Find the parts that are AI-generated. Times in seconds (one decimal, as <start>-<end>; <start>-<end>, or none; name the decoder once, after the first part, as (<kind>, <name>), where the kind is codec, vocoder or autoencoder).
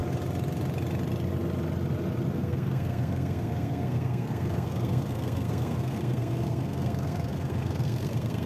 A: 2.3-8.5 (codec, SNAC)